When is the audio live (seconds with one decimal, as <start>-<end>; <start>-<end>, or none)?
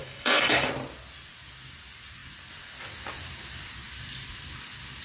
0.7-5.0